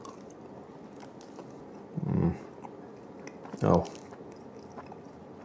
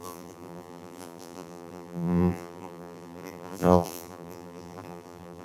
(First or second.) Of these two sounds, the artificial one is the second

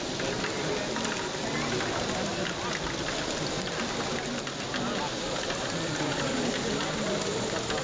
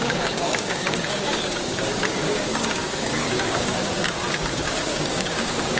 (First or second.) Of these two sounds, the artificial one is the second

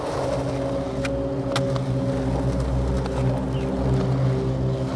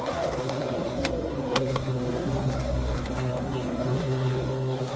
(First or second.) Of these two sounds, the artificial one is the second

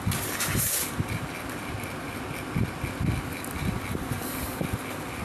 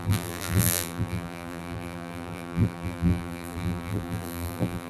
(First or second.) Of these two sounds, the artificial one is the second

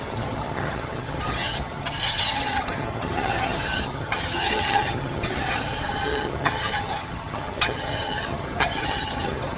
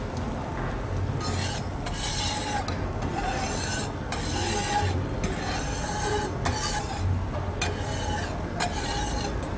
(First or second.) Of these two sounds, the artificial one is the first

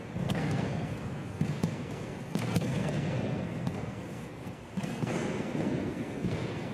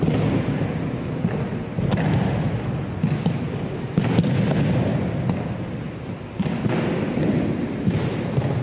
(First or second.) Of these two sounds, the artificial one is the first